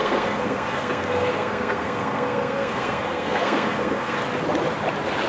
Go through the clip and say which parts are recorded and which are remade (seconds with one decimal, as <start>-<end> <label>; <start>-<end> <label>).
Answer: 0.0-4.2 remade; 4.2-5.3 recorded